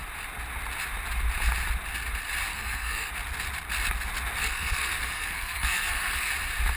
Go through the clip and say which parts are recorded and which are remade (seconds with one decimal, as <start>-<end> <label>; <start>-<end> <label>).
0.0-2.5 recorded; 2.5-3.1 remade; 3.1-4.4 recorded; 4.4-6.3 remade; 6.3-6.8 recorded